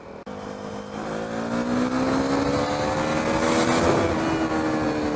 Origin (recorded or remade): recorded